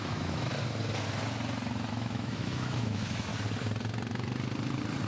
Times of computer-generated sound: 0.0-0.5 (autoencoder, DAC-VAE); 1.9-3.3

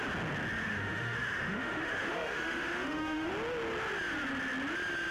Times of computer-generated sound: 0.6-3.3 (autoencoder, DAC-VAE)

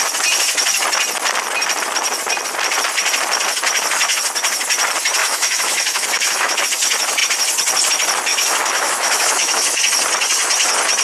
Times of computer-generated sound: 5.2-6.6 (autoencoder, DAC-VAE); 8.3-9.8

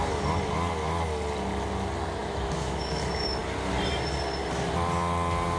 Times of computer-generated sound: 2.2-3.0 (autoencoder, DAC-VAE)

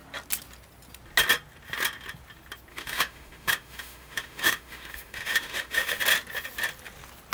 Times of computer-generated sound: 2.7-6.0 (autoencoder, DAC-VAE)

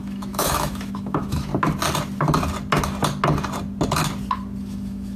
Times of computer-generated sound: 0.0-1.5 (autoencoder, DAC-VAE); 4.6-5.2

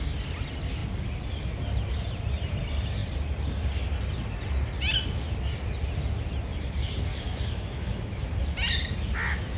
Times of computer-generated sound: 7.1-8.2 (autoencoder, DAC-VAE)

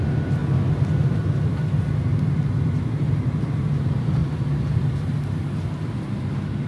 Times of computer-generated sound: none